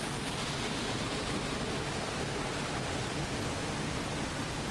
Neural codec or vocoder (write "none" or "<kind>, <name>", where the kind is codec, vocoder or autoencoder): none